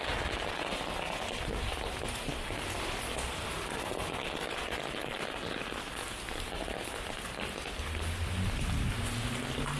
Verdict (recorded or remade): recorded